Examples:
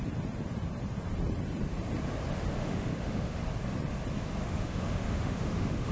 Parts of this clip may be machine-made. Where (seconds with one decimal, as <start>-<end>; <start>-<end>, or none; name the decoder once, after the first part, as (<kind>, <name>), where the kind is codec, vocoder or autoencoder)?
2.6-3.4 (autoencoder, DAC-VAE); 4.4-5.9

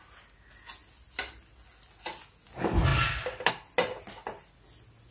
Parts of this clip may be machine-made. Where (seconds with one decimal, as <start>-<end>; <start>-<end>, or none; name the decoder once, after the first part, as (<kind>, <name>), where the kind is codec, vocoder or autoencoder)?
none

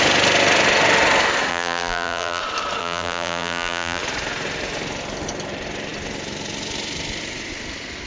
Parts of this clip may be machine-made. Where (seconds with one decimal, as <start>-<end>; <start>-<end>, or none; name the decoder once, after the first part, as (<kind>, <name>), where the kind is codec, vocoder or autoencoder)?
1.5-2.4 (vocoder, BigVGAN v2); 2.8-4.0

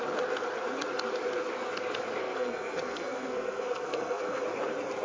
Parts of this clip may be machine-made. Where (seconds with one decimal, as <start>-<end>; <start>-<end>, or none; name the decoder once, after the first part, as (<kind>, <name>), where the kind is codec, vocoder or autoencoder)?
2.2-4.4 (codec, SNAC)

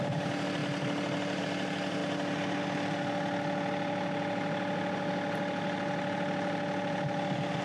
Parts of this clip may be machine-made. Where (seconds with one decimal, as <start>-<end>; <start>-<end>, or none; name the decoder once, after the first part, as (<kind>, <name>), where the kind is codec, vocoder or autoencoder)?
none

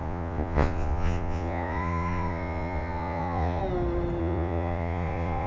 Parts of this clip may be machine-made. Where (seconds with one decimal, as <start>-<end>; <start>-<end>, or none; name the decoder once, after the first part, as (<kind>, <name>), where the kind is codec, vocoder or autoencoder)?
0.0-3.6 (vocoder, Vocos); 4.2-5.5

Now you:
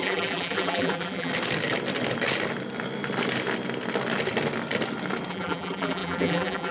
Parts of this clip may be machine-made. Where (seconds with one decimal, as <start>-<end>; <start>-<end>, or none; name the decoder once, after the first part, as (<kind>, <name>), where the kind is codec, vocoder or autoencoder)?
0.0-1.3 (vocoder, BigVGAN v2); 5.3-6.7

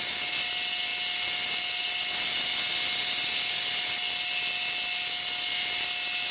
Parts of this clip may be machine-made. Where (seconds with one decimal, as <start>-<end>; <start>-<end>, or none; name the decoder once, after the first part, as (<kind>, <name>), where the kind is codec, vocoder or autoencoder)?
none